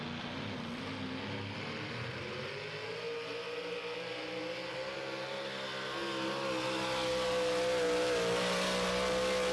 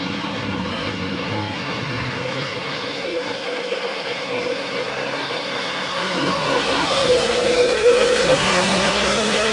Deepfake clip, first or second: second